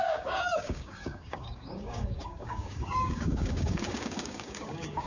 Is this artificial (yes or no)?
yes